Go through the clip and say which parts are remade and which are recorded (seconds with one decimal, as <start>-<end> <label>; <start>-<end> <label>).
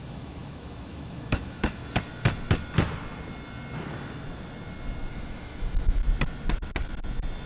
0.0-1.8 remade; 1.8-5.1 recorded; 5.1-6.0 remade; 6.0-7.5 recorded